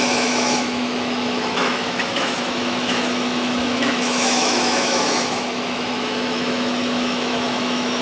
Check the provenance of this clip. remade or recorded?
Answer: remade